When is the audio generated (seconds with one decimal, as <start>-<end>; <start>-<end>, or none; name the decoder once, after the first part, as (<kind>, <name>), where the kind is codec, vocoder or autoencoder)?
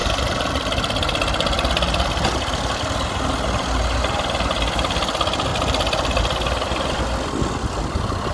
none